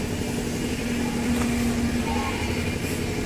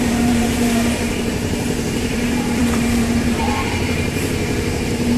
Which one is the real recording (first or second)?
first